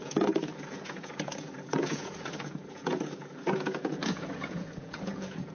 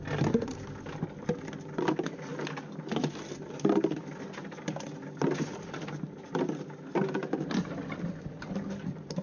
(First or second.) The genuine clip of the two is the second